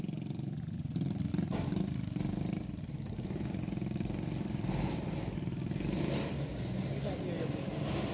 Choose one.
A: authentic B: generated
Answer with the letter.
A